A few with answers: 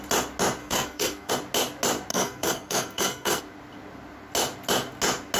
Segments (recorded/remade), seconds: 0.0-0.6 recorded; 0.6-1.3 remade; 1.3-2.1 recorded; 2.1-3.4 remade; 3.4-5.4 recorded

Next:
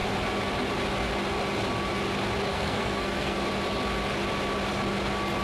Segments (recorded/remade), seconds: 0.0-2.5 recorded; 2.5-3.4 remade; 3.4-5.4 recorded